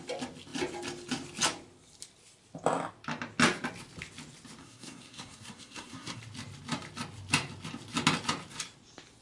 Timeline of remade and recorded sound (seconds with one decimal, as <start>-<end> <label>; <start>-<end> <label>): 0.0-4.6 recorded; 4.6-6.2 remade; 6.2-9.2 recorded